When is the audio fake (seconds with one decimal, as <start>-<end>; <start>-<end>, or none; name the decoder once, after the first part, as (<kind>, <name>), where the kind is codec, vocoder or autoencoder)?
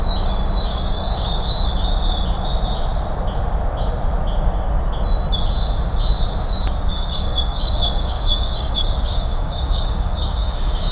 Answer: 0.7-1.4 (codec, DAC); 6.9-10.9